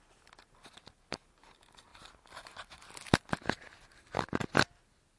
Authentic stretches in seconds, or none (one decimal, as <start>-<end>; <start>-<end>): 0.0-5.2